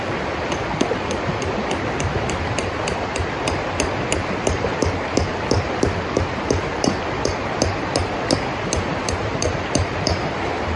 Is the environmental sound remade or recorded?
recorded